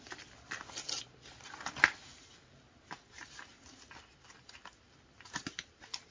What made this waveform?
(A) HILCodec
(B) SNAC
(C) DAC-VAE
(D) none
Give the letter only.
D